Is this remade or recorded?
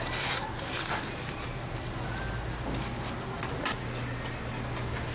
recorded